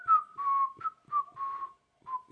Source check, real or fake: real